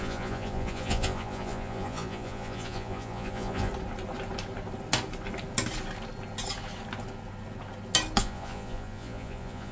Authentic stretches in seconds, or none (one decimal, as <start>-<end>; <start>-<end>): 3.7-8.2